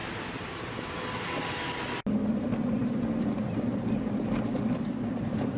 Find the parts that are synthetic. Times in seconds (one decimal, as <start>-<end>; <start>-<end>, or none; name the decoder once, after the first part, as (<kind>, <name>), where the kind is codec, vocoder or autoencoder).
none